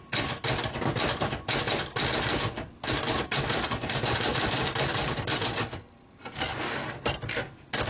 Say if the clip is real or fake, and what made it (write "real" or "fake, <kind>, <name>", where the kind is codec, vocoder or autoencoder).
fake, vocoder, BigVGAN v2